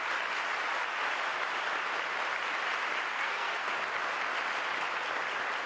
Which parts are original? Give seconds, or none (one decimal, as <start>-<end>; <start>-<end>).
0.0-3.1; 3.8-5.7